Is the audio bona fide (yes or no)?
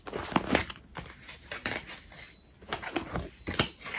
yes